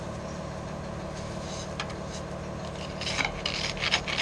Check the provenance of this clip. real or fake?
real